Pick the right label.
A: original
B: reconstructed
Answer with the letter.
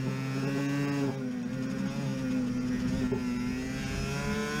A